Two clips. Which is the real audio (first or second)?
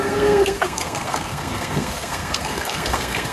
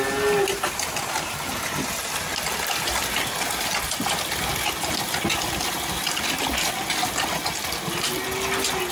second